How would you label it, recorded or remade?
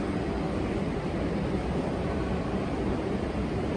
remade